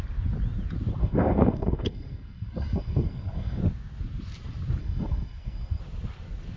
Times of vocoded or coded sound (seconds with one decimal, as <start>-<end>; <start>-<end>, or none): 1.0-3.6; 4.8-5.8